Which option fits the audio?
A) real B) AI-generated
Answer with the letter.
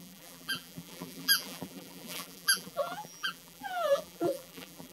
B